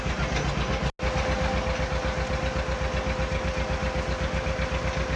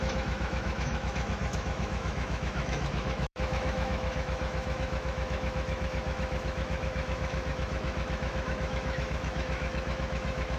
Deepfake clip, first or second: second